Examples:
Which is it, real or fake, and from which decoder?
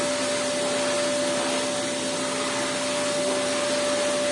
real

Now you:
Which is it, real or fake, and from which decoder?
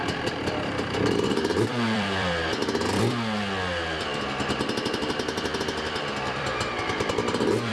fake, vocoder, BigVGAN v2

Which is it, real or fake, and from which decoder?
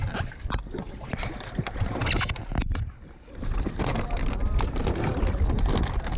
real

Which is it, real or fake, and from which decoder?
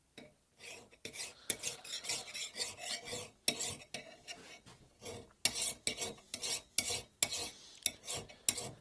real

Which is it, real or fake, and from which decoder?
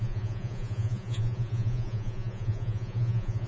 fake, vocoder, Vocos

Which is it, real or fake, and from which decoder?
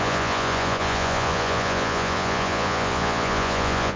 fake, vocoder, Vocos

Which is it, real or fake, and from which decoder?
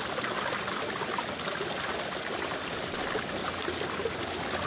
real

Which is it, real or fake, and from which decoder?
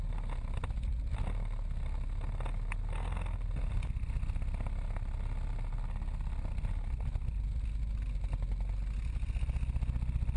real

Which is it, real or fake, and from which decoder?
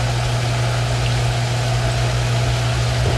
real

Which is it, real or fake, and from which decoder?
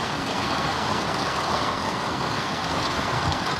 fake, codec, SNAC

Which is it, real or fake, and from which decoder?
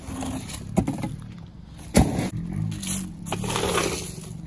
real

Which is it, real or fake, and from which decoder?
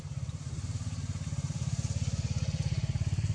fake, vocoder, BigVGAN v2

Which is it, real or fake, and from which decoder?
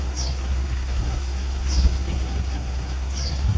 fake, codec, SNAC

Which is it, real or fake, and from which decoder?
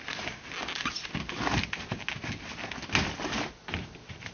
real